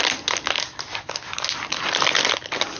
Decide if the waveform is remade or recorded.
recorded